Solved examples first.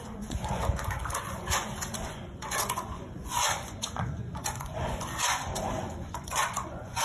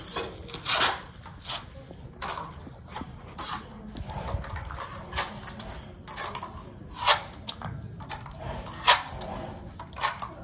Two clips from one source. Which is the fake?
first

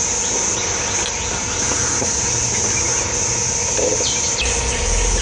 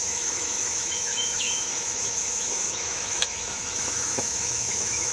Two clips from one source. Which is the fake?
second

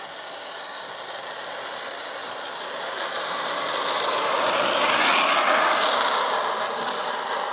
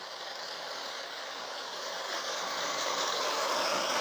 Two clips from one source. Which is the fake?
second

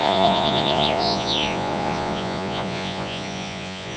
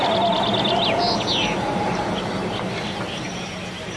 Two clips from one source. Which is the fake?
first